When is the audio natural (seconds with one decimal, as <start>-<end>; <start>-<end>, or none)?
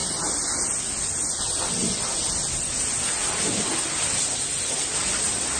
0.0-5.6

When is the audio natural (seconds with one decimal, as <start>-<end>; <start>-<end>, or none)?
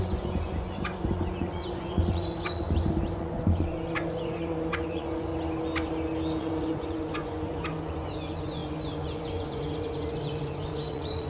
5.3-6.4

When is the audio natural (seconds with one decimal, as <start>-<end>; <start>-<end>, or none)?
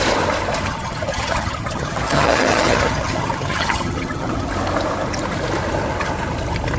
0.0-0.7; 4.5-6.8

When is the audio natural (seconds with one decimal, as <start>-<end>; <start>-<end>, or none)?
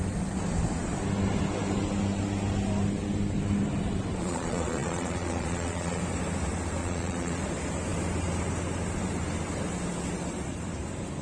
0.0-4.2; 6.0-6.8; 7.4-11.2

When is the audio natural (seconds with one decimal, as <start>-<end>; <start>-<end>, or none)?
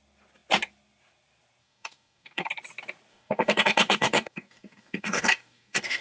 0.0-1.6; 2.5-3.1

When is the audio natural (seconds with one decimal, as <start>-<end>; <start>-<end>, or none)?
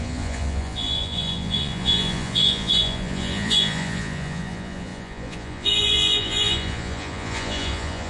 none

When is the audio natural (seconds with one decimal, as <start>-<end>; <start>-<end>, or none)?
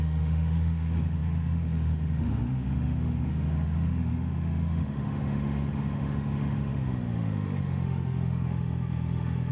none